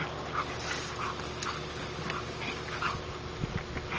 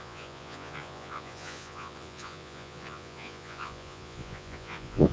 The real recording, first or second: first